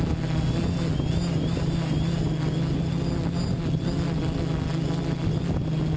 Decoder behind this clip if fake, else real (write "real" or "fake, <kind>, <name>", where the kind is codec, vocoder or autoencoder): real